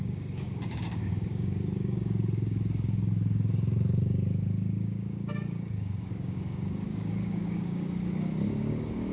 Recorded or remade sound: remade